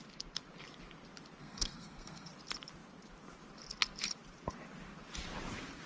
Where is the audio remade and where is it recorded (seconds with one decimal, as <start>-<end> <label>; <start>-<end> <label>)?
0.0-1.4 recorded; 1.4-2.3 remade; 2.3-5.9 recorded